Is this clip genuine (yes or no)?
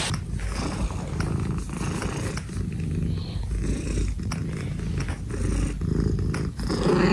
yes